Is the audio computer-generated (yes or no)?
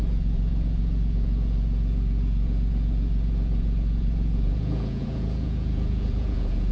yes